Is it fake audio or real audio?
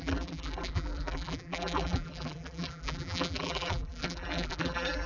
fake